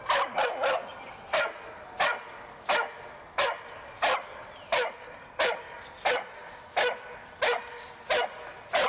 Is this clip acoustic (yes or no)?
yes